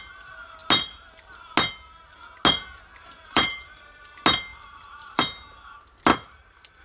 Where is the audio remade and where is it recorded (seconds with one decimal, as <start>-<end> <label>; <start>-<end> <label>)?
0.0-2.9 recorded; 2.9-3.8 remade; 3.8-4.5 recorded; 4.5-5.2 remade; 5.2-6.1 recorded; 6.1-6.8 remade